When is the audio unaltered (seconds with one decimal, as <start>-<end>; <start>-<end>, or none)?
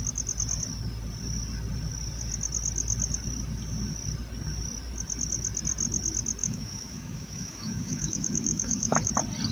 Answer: 0.0-6.4; 9.1-9.5